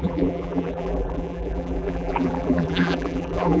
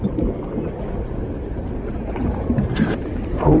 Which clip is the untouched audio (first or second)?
second